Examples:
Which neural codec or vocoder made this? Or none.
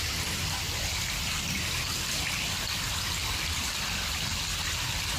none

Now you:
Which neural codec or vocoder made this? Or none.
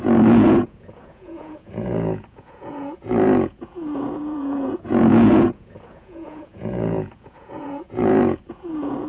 vocoder, Vocos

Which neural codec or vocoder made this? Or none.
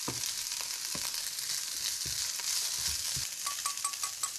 none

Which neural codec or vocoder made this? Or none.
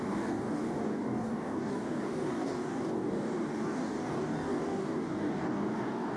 codec, DAC